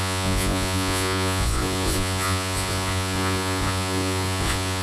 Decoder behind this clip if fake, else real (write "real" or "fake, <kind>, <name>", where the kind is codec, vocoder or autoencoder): fake, vocoder, Vocos